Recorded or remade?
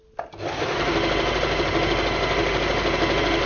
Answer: recorded